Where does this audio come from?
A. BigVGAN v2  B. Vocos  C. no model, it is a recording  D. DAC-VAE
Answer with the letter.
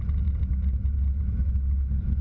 C